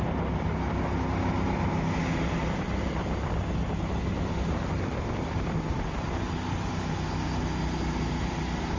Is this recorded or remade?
recorded